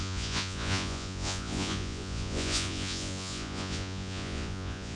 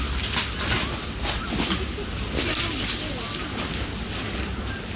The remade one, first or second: first